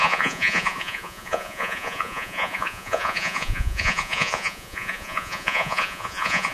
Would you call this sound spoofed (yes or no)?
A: yes